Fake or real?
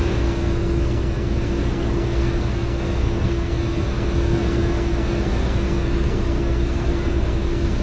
fake